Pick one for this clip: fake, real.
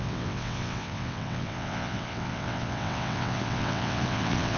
fake